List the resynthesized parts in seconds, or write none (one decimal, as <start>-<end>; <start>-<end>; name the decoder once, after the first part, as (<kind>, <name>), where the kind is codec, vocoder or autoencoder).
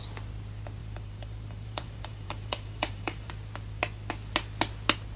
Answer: 0.8-3.3 (vocoder, BigVGAN v2)